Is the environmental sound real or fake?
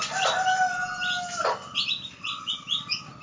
real